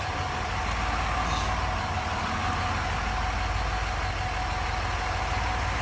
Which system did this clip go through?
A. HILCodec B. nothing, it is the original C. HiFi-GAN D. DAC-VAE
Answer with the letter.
B